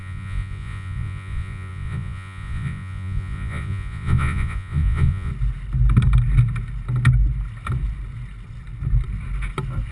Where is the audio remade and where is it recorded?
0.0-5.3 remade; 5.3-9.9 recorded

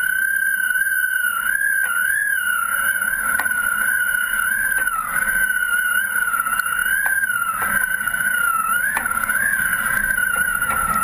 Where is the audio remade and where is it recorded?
0.0-11.0 remade

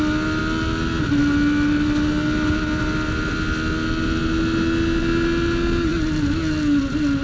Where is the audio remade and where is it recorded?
0.0-7.2 recorded

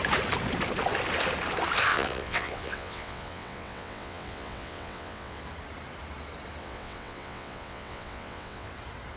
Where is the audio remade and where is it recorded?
0.0-1.9 recorded; 1.9-5.4 remade; 5.4-6.6 recorded; 6.6-8.7 remade; 8.7-9.2 recorded

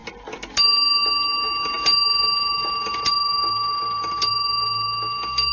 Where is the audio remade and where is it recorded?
0.0-5.5 recorded

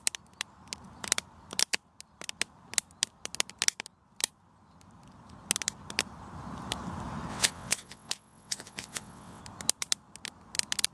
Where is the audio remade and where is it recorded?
0.0-7.3 recorded; 7.3-9.4 remade; 9.4-10.9 recorded